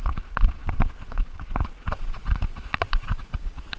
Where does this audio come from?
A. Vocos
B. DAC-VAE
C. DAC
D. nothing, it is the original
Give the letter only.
A